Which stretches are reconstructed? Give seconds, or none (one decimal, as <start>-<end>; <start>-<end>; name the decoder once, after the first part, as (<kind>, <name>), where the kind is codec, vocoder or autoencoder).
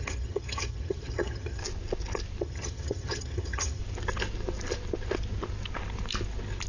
0.0-1.6 (vocoder, HiFi-GAN); 2.4-3.8